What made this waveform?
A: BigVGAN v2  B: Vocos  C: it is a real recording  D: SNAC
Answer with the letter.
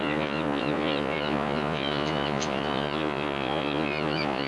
B